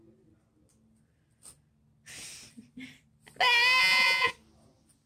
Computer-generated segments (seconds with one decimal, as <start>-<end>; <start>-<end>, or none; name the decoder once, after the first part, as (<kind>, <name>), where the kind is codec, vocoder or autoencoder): 3.8-4.3 (vocoder, Vocos)